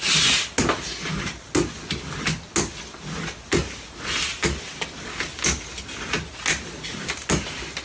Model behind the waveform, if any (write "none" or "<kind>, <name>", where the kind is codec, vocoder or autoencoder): none